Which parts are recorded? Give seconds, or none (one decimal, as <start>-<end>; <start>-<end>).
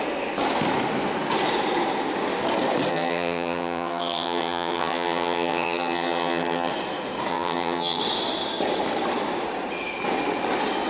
0.0-2.9; 6.7-7.3; 8.0-10.9